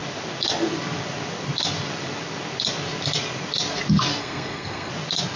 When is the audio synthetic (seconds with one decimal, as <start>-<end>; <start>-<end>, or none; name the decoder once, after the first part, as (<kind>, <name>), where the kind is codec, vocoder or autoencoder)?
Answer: 4.2-4.9 (codec, SNAC)